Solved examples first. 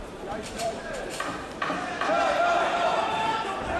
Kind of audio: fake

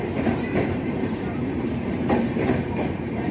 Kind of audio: fake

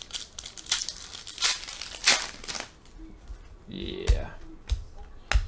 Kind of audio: real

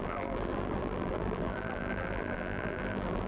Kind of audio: fake